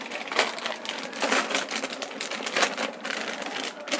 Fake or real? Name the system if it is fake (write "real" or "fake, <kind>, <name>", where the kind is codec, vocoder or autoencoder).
real